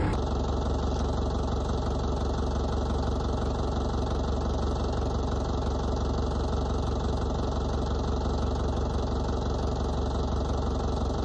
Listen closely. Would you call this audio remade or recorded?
recorded